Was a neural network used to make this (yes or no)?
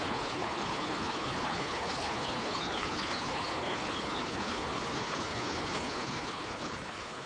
yes